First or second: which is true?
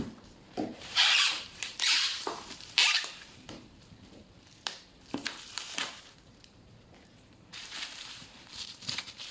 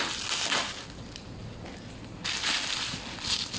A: second